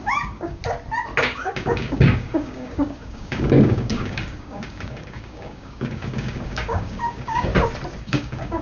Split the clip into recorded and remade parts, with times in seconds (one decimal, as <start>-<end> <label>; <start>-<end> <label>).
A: 0.0-0.6 remade; 0.6-1.2 recorded; 1.2-7.5 remade; 7.5-8.0 recorded; 8.0-8.6 remade